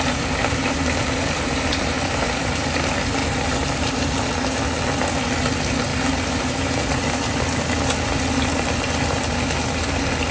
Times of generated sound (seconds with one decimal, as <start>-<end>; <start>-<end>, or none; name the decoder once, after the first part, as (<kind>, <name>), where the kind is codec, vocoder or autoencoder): 0.4-2.6 (vocoder, BigVGAN v2); 3.2-4.1; 5.9-7.0